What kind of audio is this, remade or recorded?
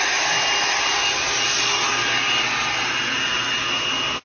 recorded